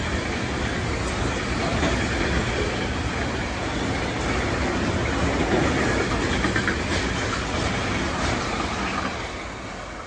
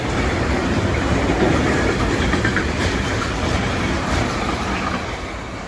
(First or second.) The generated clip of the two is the second